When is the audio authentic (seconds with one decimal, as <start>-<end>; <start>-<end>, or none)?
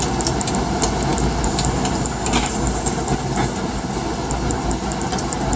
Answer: 0.0-5.6